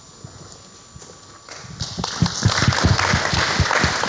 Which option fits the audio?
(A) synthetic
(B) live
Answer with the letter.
B